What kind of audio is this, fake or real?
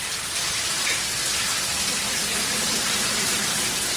real